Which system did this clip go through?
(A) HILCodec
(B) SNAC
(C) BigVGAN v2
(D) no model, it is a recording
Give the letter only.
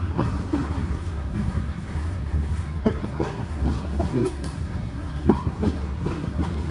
B